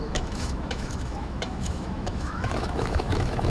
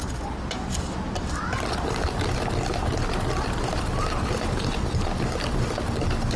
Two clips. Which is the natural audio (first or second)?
second